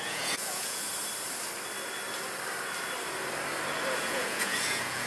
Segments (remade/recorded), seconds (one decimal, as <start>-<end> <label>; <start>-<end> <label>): 0.0-0.9 remade; 0.9-4.0 recorded; 4.0-5.1 remade